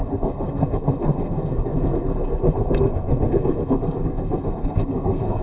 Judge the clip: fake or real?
fake